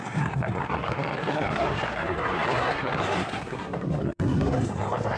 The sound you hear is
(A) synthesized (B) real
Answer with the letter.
A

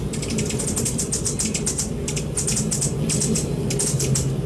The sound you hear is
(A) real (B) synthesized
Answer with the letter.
A